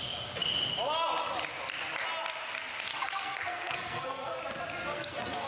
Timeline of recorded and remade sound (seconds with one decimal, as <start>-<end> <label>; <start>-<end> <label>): 0.0-2.9 recorded; 2.9-4.4 remade; 4.4-4.9 recorded; 4.9-5.5 remade